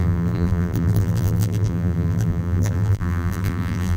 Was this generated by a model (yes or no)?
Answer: yes